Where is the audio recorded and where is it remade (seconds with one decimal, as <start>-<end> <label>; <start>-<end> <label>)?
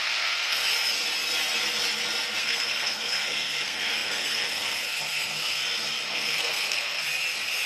0.0-0.6 remade; 0.6-2.4 recorded; 2.4-5.6 remade; 5.6-6.1 recorded; 6.1-7.0 remade; 7.0-7.7 recorded